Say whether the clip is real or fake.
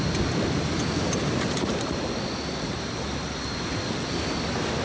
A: real